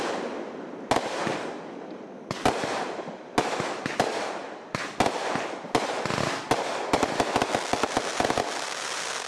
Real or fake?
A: real